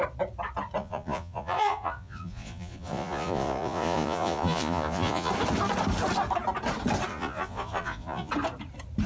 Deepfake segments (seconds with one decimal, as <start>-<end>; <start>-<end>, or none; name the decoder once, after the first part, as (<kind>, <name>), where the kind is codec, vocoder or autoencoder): 0.8-5.3 (vocoder, Vocos); 7.1-8.3